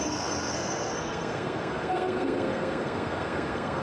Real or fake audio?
fake